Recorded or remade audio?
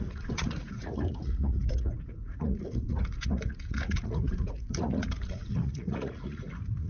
remade